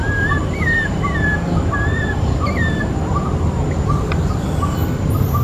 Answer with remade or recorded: recorded